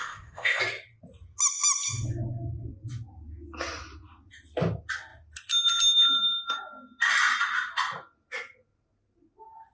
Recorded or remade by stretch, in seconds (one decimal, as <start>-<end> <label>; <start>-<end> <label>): 0.0-0.6 remade; 0.6-9.7 recorded